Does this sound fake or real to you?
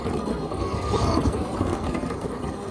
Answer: fake